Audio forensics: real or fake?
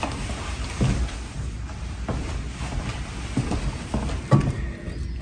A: real